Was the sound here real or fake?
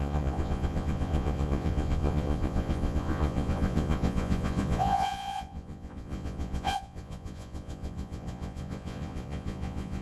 fake